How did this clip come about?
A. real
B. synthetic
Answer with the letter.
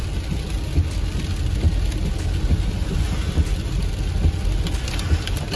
A